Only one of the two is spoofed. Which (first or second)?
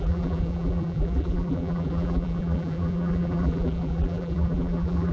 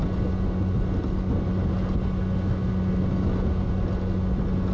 first